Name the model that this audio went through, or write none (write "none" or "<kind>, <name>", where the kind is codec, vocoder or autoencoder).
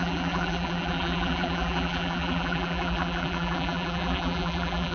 vocoder, BigVGAN v2